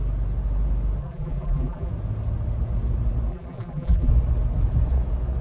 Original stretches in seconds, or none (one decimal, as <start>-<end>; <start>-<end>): 0.0-1.0; 1.9-3.3; 4.1-5.4